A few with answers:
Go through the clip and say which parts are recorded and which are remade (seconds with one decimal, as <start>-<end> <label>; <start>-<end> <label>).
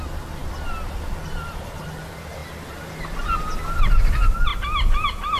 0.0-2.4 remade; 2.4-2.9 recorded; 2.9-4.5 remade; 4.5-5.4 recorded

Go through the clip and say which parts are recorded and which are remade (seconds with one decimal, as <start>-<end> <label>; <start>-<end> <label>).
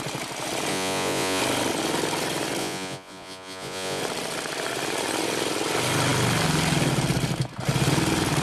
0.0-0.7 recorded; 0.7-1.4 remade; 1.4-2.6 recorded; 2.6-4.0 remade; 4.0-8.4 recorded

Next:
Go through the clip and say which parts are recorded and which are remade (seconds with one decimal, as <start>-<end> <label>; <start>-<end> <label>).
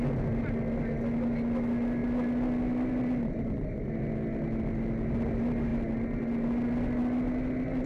0.0-7.9 recorded